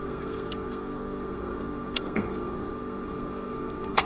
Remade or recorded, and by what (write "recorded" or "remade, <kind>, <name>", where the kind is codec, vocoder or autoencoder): remade, codec, SNAC